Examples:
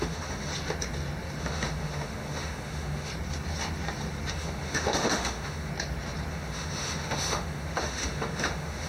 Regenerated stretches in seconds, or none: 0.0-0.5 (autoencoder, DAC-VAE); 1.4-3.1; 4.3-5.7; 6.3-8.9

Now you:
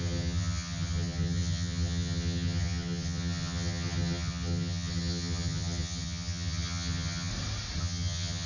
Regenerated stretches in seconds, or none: 0.0-7.3 (vocoder, HiFi-GAN); 7.8-8.5

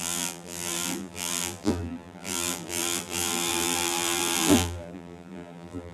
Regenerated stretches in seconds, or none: 0.0-5.9 (vocoder, BigVGAN v2)

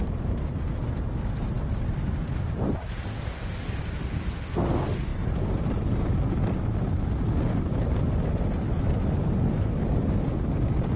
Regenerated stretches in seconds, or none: none

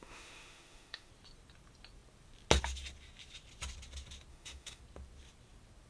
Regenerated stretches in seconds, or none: 0.0-1.1 (autoencoder, DAC-VAE); 4.3-4.8

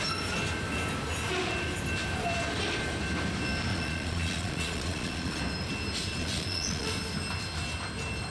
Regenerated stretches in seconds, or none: 3.7-5.4 (vocoder, Vocos); 6.2-6.9

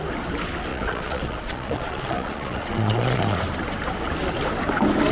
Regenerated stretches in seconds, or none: 0.7-3.4 (vocoder, Vocos)

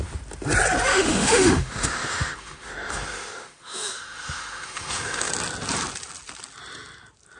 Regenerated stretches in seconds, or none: 0.9-5.3 (autoencoder, DAC-VAE)